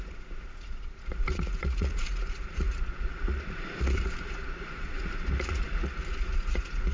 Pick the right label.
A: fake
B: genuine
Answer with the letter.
A